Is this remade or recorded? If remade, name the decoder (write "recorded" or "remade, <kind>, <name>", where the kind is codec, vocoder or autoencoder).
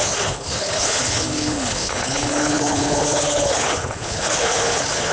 remade, codec, HILCodec